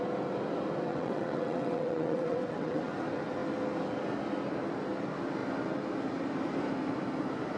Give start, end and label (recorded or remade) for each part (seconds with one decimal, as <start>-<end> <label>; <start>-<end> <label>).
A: 0.0-0.9 recorded; 0.9-2.9 remade; 2.9-7.6 recorded